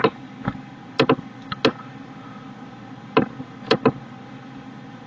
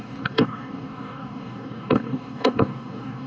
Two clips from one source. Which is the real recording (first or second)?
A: first